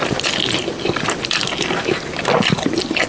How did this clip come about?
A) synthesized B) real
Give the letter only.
B